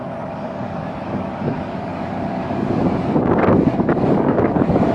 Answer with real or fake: fake